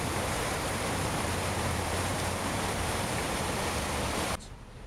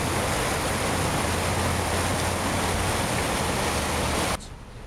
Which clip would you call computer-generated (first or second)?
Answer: first